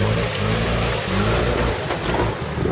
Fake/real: real